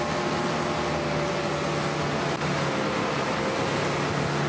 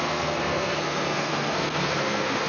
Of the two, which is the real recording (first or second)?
first